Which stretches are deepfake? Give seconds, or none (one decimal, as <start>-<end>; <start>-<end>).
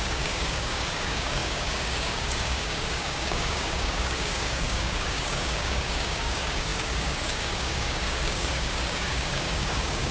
0.0-10.1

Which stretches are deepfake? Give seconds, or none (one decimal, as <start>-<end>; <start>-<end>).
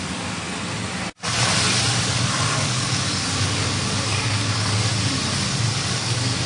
0.0-0.5; 2.0-4.9; 5.9-6.5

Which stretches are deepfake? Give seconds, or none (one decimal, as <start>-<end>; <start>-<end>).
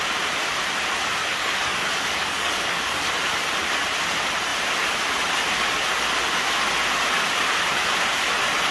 1.2-3.1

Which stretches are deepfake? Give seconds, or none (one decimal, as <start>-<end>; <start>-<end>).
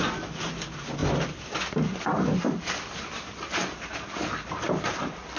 none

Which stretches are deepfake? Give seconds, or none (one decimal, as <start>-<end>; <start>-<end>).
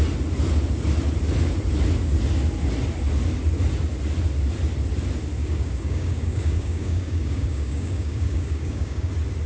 5.4-9.1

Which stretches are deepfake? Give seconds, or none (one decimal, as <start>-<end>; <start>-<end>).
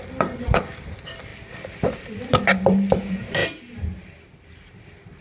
none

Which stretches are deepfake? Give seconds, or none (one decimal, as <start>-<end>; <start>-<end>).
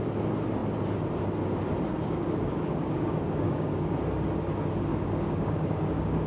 1.9-3.9; 4.9-6.3